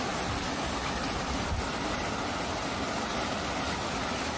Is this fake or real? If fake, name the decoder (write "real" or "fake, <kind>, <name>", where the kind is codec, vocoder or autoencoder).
real